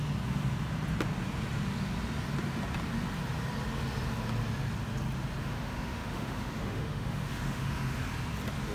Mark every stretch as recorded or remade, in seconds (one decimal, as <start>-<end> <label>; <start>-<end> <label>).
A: 0.0-5.4 recorded; 5.4-8.0 remade; 8.0-8.7 recorded